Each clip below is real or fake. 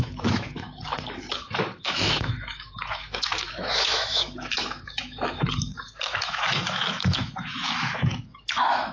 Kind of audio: fake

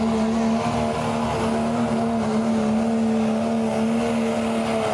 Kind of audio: real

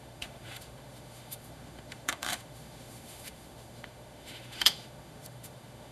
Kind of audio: fake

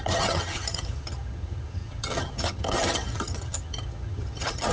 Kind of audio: fake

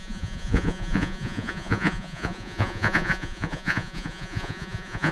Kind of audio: fake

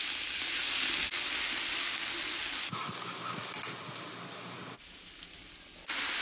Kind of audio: real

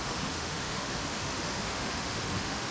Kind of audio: fake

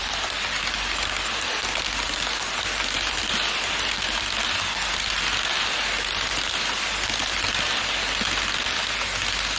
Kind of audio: real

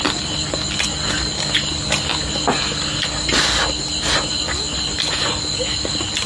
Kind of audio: real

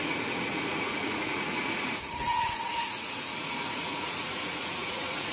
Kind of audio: fake